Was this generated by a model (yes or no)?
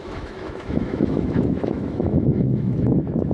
yes